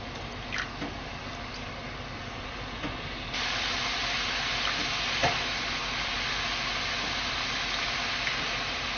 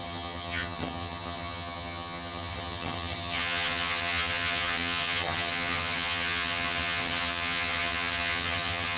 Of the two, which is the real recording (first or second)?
first